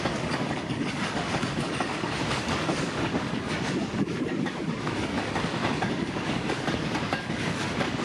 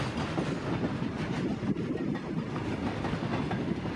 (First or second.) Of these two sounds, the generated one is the first